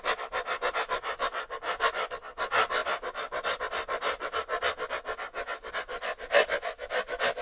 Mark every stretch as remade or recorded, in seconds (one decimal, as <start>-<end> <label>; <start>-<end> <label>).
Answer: 0.0-7.4 recorded